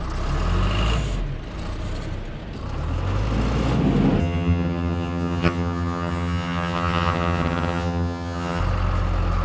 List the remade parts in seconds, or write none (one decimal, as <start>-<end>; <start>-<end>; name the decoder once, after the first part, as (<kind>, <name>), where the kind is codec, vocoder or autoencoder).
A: 4.2-8.6 (vocoder, HiFi-GAN)

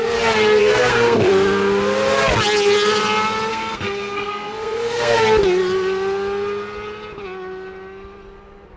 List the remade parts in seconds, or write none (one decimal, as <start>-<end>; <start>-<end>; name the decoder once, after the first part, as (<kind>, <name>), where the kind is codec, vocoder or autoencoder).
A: 0.6-1.3 (codec, SNAC); 3.5-5.2

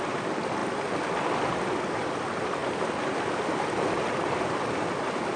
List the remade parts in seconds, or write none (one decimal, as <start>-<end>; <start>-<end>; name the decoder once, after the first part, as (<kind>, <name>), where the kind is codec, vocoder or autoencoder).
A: none

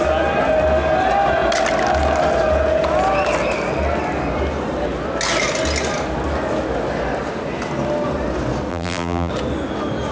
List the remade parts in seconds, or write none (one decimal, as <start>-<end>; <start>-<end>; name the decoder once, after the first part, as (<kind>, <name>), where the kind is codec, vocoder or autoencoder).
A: 8.7-9.3 (vocoder, BigVGAN v2)

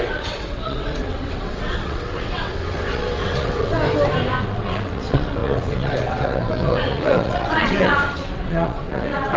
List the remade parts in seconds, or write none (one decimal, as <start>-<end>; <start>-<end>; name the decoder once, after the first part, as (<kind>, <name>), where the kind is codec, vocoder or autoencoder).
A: 0.0-3.8 (vocoder, WaveNeXt); 4.4-9.4